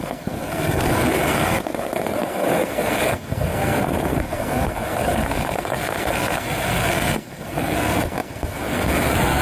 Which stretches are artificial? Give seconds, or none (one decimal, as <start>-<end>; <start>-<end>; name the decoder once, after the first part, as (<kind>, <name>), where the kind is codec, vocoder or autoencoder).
0.0-9.4 (codec, SNAC)